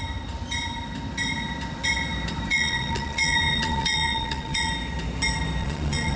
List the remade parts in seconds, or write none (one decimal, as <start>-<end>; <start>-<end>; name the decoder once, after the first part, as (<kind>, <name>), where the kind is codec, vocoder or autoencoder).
2.5-4.7 (vocoder, Vocos); 5.6-6.2